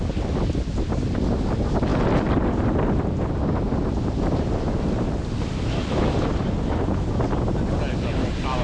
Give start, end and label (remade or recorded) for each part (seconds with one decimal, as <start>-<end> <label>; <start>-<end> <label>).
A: 0.0-8.6 recorded